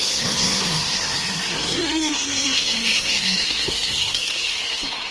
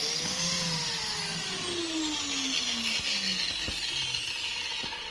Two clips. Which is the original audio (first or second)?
second